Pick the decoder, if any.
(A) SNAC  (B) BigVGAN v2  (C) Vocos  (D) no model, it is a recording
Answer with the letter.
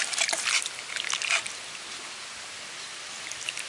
D